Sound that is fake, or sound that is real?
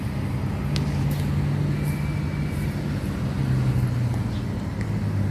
real